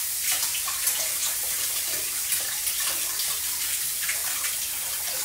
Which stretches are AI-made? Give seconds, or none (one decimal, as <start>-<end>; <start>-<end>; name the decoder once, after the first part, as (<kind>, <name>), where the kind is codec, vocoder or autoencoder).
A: none